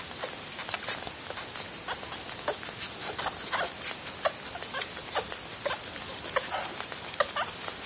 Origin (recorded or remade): recorded